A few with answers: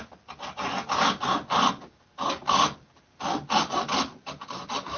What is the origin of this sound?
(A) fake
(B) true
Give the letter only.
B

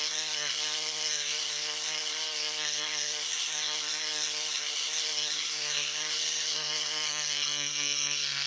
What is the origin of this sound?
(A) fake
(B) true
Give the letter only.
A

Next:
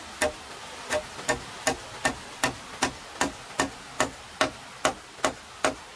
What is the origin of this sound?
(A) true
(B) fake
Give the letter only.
A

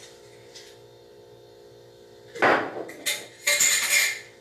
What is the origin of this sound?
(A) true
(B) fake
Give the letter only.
A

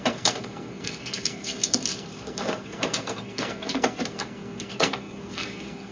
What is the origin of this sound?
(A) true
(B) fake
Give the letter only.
B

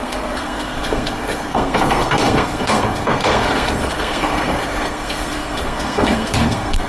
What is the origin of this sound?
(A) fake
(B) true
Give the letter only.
A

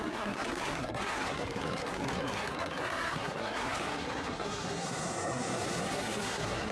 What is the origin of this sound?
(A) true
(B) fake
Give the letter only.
B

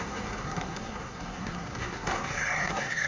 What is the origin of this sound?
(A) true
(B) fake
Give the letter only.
B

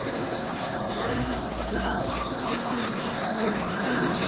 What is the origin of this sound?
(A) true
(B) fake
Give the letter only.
B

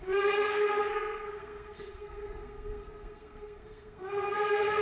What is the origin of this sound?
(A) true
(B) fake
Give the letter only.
B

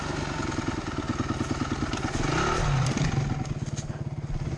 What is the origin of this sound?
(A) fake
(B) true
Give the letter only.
B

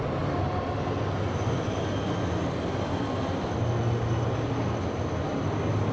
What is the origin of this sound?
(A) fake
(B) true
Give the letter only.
B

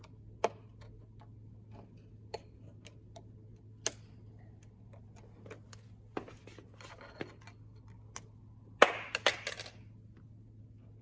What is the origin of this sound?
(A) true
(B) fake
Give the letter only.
A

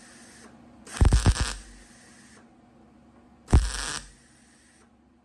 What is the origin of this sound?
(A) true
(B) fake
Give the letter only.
A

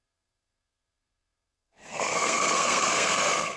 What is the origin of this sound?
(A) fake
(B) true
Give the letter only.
A